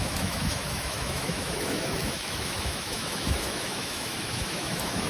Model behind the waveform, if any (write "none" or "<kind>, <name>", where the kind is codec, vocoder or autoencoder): autoencoder, DAC-VAE